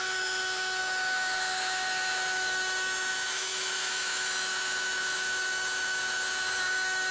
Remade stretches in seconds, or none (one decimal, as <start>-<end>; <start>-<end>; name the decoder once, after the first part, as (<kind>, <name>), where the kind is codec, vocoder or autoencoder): 0.0-7.1 (autoencoder, DAC-VAE)